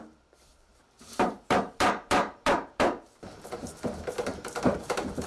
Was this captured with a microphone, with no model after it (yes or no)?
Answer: no